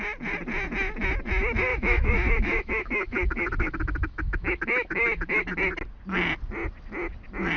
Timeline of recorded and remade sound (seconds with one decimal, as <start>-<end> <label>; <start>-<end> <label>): 0.0-1.7 recorded; 1.7-5.4 remade; 5.4-7.6 recorded